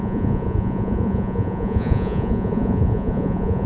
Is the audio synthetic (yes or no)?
yes